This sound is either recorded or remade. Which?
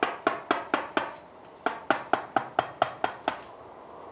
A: recorded